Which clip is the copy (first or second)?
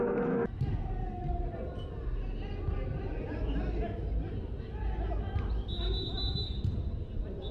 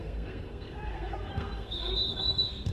second